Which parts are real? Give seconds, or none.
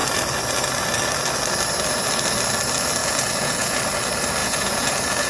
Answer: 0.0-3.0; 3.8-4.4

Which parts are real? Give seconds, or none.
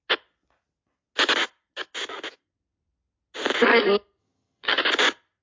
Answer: 0.0-4.2; 4.8-5.4